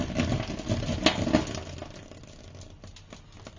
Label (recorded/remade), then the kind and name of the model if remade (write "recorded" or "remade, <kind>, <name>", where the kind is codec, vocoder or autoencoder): recorded